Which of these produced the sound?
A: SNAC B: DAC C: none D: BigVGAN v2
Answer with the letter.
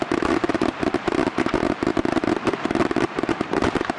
D